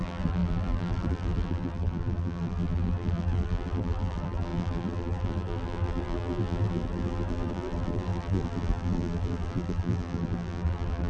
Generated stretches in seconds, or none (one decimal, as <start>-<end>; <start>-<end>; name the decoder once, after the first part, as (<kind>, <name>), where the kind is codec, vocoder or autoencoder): 0.0-11.1 (vocoder, BigVGAN v2)